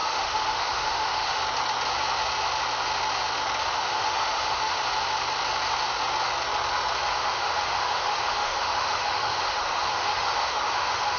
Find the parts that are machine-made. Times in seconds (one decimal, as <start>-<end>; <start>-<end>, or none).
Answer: 0.0-1.4; 3.6-4.8; 7.1-11.2

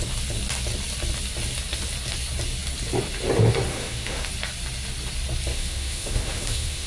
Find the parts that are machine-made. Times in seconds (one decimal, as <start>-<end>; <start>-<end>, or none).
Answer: 3.7-4.3; 5.5-6.9

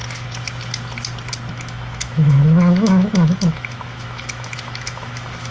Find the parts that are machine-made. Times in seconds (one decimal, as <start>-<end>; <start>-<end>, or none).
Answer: 1.5-5.5

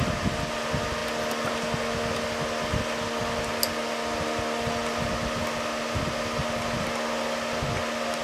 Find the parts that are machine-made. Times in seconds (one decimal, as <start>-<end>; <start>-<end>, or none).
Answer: none

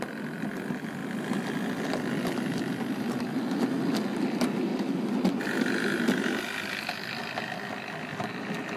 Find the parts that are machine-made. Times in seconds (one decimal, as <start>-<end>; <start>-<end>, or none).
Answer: none